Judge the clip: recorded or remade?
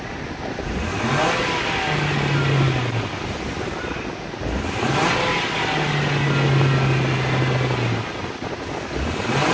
recorded